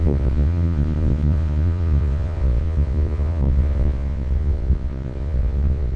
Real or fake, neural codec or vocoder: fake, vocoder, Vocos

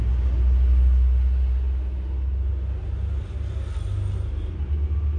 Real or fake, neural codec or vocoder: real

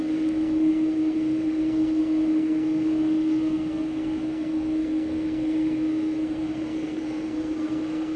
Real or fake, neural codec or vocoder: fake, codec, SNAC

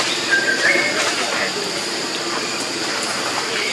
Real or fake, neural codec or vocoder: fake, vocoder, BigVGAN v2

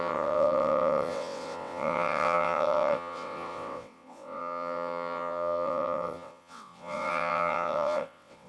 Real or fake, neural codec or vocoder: fake, vocoder, WaveNeXt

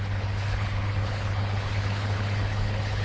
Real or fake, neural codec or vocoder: fake, codec, HILCodec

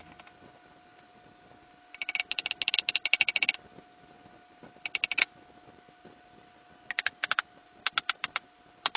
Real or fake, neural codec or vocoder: real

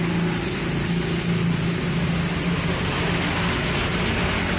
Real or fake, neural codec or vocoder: real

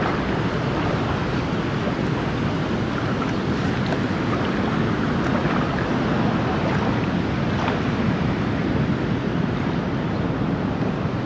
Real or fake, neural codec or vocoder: real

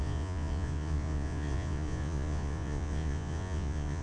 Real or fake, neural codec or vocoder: fake, vocoder, Vocos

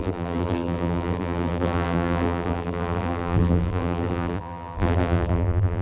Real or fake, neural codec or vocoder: fake, vocoder, BigVGAN v2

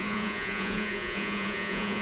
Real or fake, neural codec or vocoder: fake, vocoder, Vocos